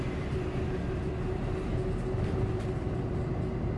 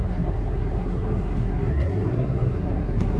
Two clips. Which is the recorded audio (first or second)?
first